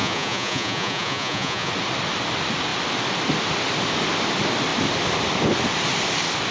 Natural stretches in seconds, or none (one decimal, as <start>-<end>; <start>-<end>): 1.7-6.5